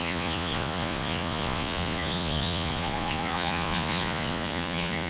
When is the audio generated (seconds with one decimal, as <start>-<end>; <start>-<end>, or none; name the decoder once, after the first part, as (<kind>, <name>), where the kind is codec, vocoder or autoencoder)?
0.0-5.1 (vocoder, Vocos)